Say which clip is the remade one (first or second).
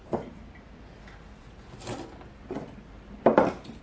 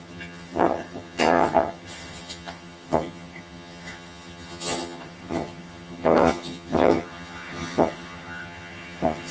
second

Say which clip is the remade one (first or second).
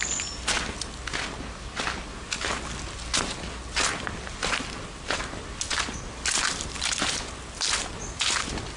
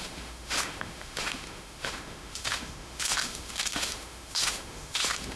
second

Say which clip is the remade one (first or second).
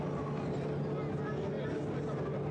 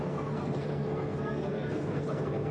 second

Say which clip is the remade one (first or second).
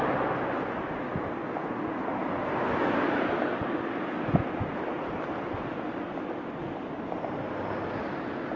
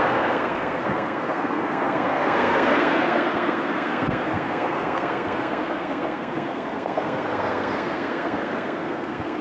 second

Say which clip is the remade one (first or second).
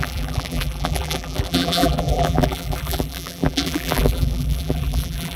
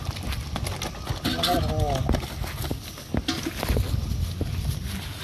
first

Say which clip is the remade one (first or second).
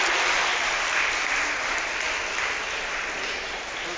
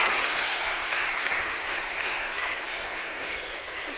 second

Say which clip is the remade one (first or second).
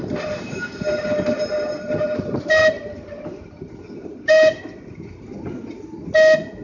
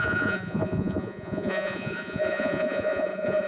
second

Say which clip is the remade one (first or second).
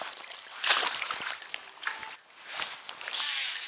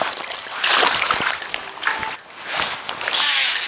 first